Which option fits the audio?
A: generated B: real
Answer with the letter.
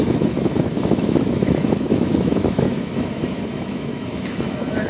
A